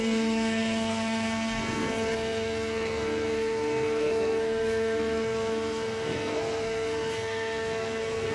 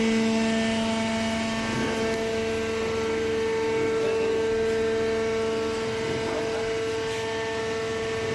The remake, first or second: first